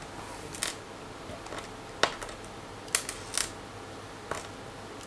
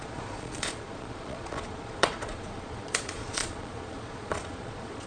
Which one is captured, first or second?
first